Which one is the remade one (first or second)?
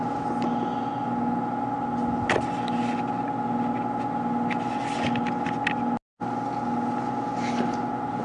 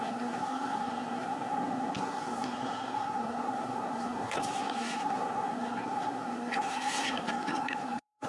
second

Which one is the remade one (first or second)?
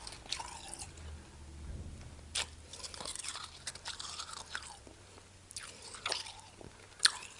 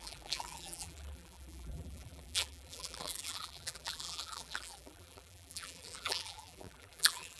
second